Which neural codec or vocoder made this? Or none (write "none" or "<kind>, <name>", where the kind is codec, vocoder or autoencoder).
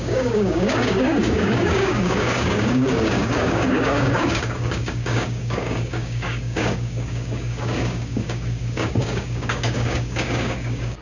codec, DAC